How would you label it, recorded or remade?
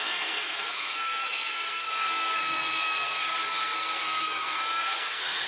remade